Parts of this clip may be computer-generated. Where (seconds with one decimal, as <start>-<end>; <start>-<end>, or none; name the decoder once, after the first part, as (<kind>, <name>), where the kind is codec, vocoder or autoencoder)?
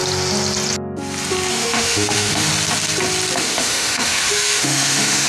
1.5-2.5 (autoencoder, DAC-VAE); 3.4-5.3